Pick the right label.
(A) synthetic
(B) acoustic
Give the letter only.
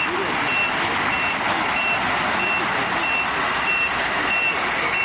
B